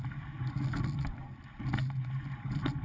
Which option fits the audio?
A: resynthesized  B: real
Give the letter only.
B